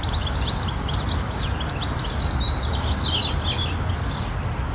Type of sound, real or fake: real